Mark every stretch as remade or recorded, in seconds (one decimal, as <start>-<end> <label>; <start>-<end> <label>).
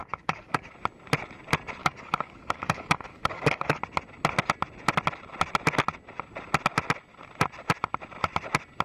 0.0-0.7 remade; 0.7-1.8 recorded; 1.8-3.8 remade; 3.8-8.8 recorded